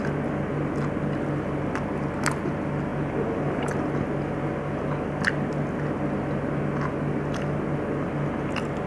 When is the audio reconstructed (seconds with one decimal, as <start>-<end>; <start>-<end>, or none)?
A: none